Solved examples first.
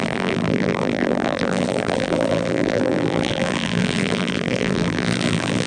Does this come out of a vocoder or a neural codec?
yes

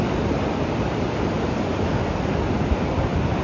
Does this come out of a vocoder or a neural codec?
yes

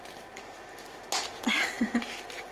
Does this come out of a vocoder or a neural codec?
no